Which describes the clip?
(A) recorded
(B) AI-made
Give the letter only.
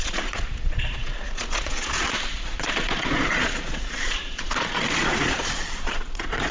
B